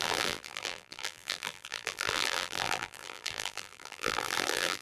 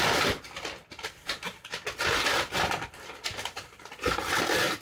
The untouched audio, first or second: second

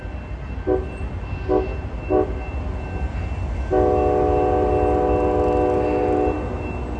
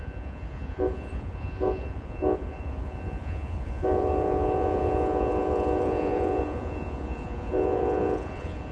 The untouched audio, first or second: first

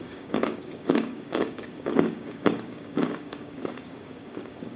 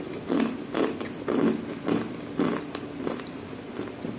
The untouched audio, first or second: second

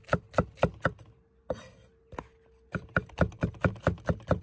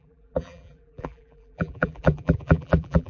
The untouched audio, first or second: first